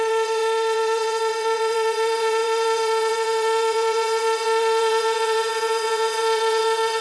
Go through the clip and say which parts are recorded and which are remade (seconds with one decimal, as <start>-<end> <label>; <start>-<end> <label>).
0.0-7.0 remade